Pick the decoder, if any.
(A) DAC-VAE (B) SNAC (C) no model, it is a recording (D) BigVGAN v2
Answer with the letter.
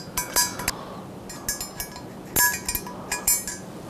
C